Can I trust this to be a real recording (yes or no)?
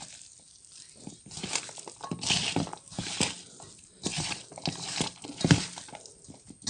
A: yes